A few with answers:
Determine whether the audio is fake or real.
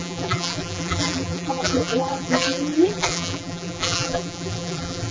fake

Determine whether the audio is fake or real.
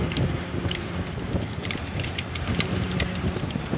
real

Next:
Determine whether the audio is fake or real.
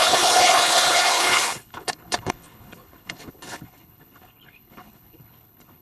fake